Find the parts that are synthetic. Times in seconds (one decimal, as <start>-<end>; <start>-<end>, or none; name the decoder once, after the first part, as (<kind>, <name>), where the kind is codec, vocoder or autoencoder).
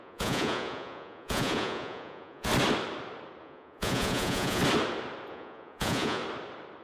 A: 0.0-2.5 (vocoder, Vocos); 3.4-4.6; 5.3-6.2